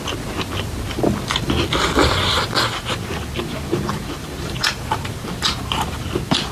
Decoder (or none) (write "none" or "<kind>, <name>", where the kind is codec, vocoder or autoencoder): none